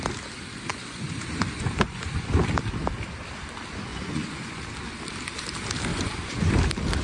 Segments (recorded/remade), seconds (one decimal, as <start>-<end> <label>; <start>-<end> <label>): 0.0-0.7 recorded; 0.7-2.4 remade; 2.4-3.9 recorded; 3.9-4.6 remade; 4.6-5.9 recorded; 5.9-6.5 remade; 6.5-7.0 recorded

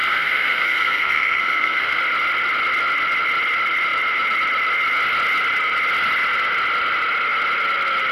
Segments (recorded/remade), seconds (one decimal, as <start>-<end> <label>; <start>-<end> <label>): 0.0-2.0 remade; 2.0-8.1 recorded

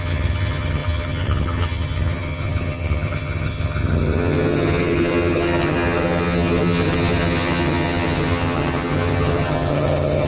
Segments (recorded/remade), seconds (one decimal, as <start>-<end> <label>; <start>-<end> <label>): 0.0-10.3 remade

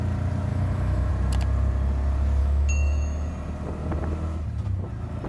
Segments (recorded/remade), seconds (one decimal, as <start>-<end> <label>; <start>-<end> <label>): 0.0-0.5 recorded; 0.5-1.1 remade; 1.1-2.4 recorded; 2.4-3.3 remade; 3.3-5.3 recorded

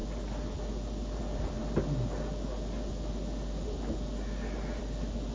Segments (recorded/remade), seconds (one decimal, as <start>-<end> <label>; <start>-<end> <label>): 0.0-5.3 recorded

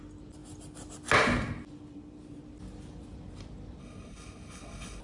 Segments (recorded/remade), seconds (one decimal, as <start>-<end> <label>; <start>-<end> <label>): 0.0-3.8 recorded; 3.8-5.0 remade

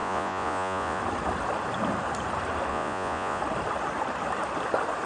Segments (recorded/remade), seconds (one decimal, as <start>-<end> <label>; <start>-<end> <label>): 0.0-1.0 remade; 1.0-2.7 recorded; 2.7-3.4 remade; 3.4-5.1 recorded

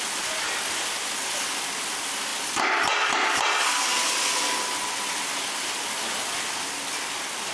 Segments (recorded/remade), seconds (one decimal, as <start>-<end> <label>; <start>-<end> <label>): 0.0-7.5 recorded